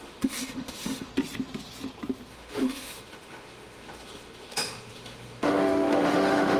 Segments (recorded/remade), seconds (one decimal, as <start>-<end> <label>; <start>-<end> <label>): 0.0-1.1 remade; 1.1-2.3 recorded; 2.3-6.6 remade